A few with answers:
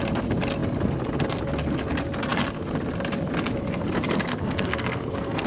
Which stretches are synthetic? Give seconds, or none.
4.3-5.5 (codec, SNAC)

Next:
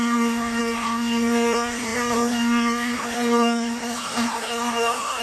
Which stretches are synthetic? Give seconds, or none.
0.0-5.2 (codec, SNAC)

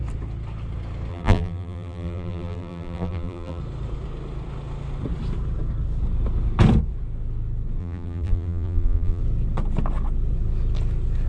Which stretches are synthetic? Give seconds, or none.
1.1-3.6 (vocoder, BigVGAN v2); 7.8-9.2

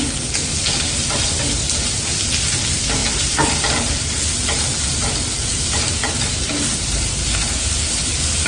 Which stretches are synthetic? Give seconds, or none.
none